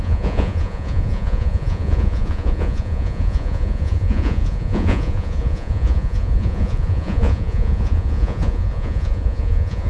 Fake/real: fake